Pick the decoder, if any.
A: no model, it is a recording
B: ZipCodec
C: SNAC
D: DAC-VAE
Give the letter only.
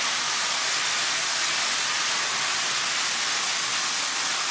A